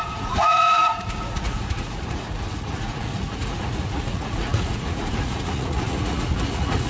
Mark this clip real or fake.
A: fake